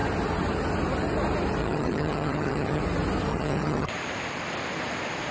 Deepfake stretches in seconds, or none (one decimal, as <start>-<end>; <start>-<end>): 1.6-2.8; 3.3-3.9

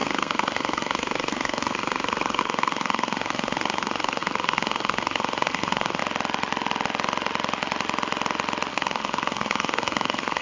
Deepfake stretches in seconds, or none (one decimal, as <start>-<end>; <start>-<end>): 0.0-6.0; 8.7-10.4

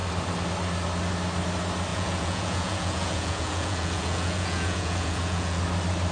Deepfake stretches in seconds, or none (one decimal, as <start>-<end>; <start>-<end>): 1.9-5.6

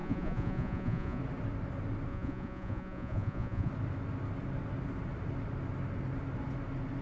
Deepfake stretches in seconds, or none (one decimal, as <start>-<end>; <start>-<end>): 0.0-1.2; 2.1-3.7

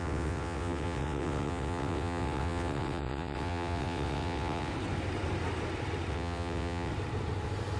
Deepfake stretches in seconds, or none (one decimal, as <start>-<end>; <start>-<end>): 0.0-4.7; 6.1-6.9

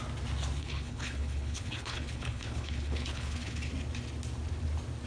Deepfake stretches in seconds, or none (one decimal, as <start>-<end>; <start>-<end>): 0.6-3.7

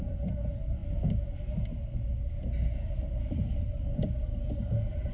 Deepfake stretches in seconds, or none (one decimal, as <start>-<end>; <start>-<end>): none

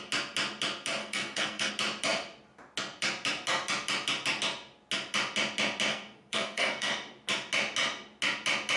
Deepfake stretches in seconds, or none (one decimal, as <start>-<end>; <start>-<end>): 1.0-1.7; 5.9-6.9